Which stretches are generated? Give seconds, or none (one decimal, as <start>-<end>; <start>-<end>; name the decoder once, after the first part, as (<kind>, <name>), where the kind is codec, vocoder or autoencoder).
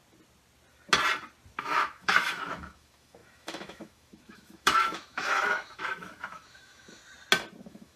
1.6-7.0 (autoencoder, DAC-VAE); 7.6-8.0